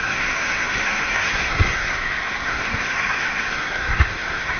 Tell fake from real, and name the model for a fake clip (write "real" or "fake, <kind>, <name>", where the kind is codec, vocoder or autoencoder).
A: fake, codec, SNAC